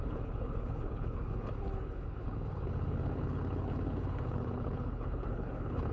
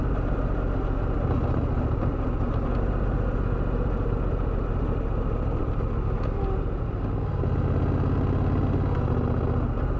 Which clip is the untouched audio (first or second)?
second